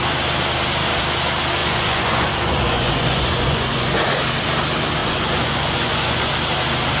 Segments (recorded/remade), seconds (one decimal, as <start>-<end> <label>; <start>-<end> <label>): 0.0-1.6 recorded; 1.6-4.0 remade; 4.0-5.0 recorded; 5.0-6.3 remade; 6.3-7.0 recorded